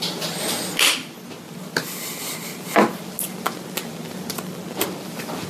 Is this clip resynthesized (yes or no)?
no